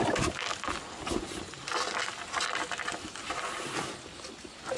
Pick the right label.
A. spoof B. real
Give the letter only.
B